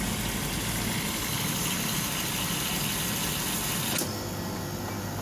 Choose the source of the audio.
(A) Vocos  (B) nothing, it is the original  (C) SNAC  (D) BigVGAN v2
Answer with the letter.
B